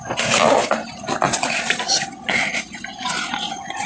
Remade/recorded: recorded